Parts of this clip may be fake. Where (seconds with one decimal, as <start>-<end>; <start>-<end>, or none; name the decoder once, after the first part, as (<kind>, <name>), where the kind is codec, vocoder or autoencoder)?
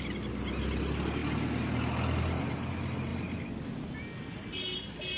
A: none